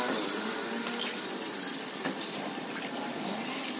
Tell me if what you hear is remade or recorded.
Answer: remade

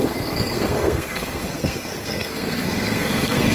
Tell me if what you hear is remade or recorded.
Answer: remade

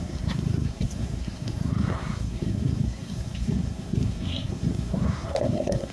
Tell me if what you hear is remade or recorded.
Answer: remade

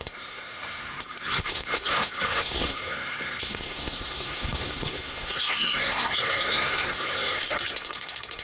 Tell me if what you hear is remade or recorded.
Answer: remade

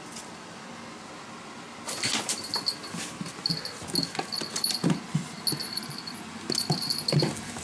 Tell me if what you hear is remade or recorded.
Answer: recorded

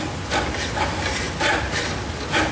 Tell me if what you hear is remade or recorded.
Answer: recorded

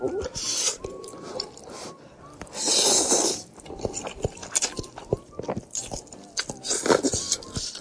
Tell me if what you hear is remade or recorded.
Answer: remade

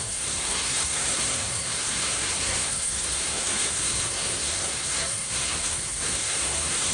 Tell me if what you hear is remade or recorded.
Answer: remade